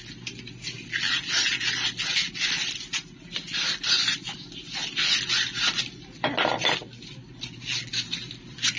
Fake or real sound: real